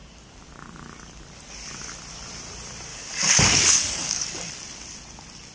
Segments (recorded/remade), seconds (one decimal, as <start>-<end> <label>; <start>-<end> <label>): 0.0-2.9 recorded; 2.9-4.5 remade; 4.5-5.5 recorded